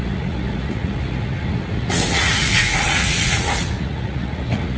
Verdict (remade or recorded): remade